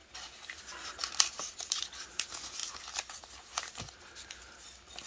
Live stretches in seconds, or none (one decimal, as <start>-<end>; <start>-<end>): 0.0-1.0; 1.6-5.1